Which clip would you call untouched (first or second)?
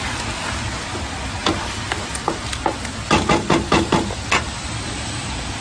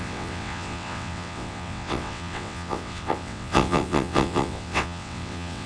first